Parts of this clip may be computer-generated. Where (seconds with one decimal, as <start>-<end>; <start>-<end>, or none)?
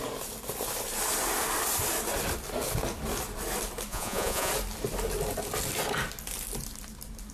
3.9-4.5